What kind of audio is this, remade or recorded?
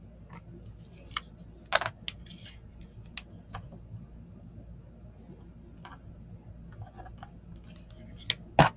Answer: recorded